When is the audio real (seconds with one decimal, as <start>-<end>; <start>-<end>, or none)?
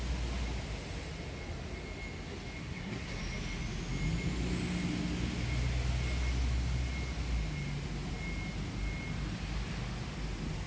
0.0-2.6; 3.2-10.7